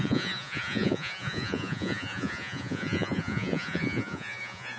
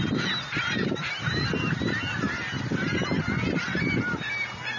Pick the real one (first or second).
second